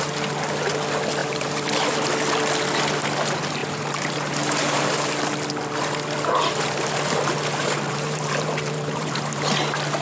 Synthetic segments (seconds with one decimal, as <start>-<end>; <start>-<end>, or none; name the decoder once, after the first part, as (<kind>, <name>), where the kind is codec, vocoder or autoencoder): 1.2-1.7 (vocoder, BigVGAN v2); 3.6-5.2; 7.6-9.5